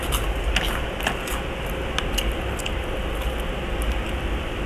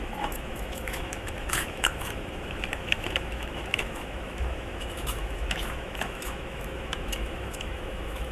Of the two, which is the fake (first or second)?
second